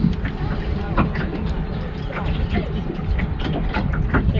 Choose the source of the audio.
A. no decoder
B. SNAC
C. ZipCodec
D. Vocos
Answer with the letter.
A